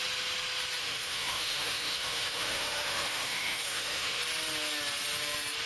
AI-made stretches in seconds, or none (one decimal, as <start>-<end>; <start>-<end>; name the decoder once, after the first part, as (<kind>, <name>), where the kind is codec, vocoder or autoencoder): 0.8-4.2 (autoencoder, DAC-VAE)